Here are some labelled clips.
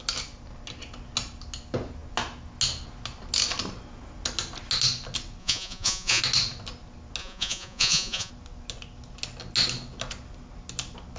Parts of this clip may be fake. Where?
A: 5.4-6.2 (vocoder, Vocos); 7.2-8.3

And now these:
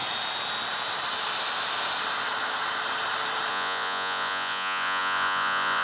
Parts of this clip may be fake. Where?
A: 3.5-5.8 (vocoder, Vocos)

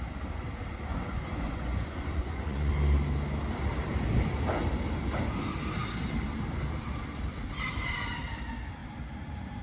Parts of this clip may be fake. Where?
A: 0.9-2.7 (vocoder, Vocos)

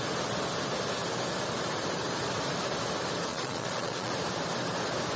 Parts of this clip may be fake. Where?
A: 3.3-4.1 (vocoder, Vocos)

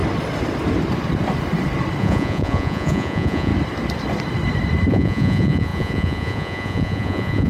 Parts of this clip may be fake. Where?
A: 2.0-3.5 (vocoder, Vocos); 4.9-7.5

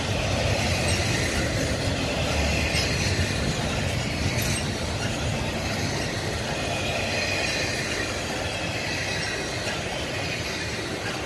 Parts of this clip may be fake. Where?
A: none

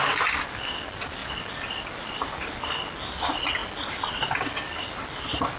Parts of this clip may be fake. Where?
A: none

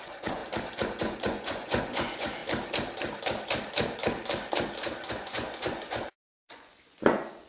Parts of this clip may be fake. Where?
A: 0.0-0.4 (vocoder, Vocos); 1.0-2.4; 5.1-7.5